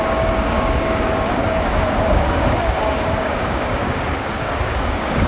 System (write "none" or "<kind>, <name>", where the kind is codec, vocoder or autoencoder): codec, DAC